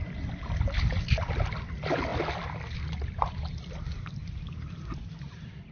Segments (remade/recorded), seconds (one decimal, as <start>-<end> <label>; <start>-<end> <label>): 0.0-5.7 recorded